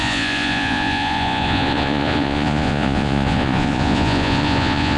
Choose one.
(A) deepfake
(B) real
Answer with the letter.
A